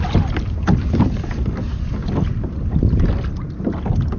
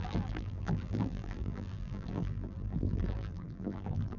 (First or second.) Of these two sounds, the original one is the first